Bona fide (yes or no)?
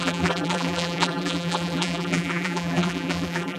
no